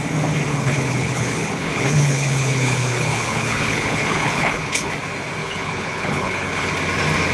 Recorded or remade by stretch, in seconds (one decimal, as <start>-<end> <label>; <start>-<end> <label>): 0.0-0.5 recorded; 0.5-4.9 remade; 4.9-5.4 recorded; 5.4-6.7 remade; 6.7-7.3 recorded